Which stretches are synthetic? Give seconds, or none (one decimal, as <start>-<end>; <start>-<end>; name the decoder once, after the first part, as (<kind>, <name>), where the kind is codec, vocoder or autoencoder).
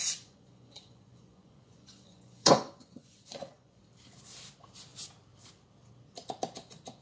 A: 0.0-3.8 (vocoder, Vocos)